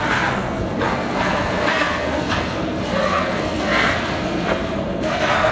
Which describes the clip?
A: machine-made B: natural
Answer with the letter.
A